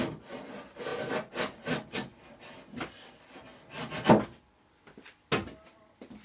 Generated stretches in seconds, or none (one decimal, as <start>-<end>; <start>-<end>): none